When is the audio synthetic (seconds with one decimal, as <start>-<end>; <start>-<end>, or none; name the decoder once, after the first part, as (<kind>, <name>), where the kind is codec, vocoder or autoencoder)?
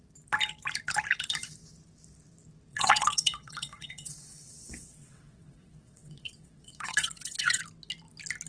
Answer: 2.7-7.6 (vocoder, WaveNeXt)